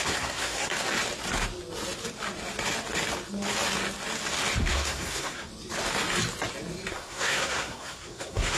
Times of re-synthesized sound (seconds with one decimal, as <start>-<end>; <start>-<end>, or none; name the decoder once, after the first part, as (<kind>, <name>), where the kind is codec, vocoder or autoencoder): 0.0-0.7 (codec, SNAC); 4.6-5.5; 6.9-8.6